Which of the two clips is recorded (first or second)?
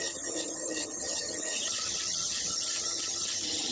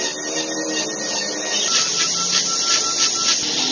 second